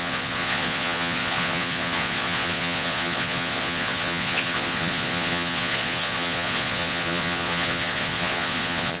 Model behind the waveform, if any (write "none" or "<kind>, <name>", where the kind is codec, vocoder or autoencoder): vocoder, Vocos